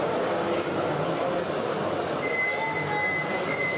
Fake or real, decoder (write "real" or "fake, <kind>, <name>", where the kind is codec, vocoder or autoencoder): real